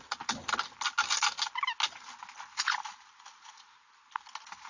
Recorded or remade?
recorded